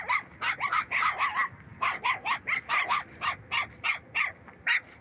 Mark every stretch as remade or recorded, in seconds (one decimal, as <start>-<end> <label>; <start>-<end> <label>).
0.0-5.0 recorded